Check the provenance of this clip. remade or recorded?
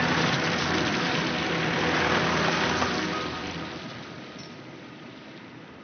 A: remade